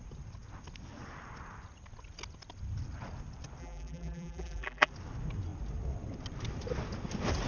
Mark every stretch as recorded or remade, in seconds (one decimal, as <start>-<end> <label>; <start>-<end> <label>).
0.0-3.6 recorded; 3.6-4.9 remade; 4.9-7.5 recorded